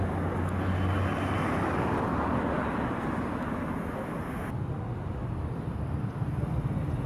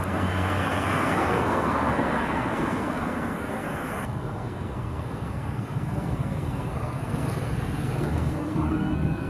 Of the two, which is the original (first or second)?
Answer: first